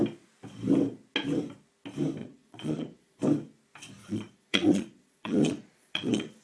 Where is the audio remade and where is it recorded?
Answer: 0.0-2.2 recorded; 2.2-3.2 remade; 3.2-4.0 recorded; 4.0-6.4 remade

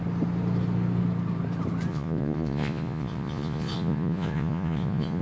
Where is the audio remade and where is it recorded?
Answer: 0.0-1.9 recorded; 1.9-5.2 remade

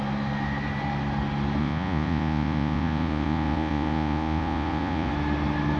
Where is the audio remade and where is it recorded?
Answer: 0.0-1.6 recorded; 1.6-5.1 remade; 5.1-5.8 recorded

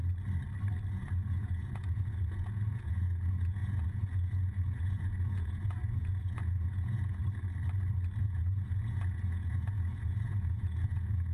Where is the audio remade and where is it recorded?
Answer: 0.0-0.9 recorded; 0.9-7.2 remade; 7.2-8.2 recorded; 8.2-11.3 remade